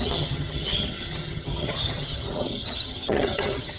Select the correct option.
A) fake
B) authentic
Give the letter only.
A